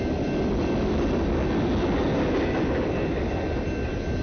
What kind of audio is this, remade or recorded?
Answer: recorded